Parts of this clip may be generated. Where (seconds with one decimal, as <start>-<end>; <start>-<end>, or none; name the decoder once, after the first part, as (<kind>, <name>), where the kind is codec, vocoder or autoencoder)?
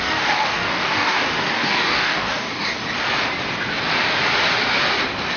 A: 0.0-2.8 (codec, DAC)